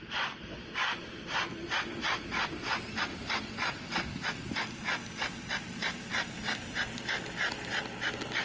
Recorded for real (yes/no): yes